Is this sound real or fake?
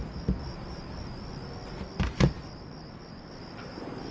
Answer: real